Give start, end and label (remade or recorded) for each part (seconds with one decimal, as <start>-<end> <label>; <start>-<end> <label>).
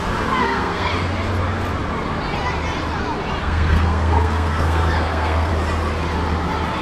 0.0-0.4 recorded; 0.4-0.9 remade; 0.9-3.4 recorded; 3.4-5.5 remade; 5.5-6.8 recorded